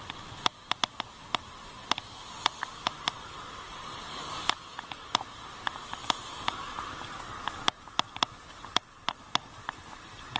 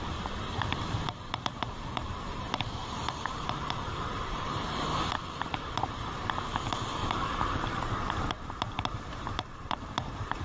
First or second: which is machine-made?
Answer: second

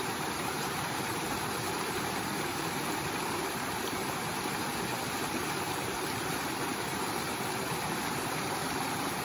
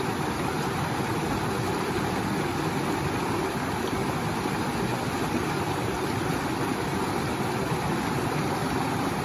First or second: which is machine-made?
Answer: first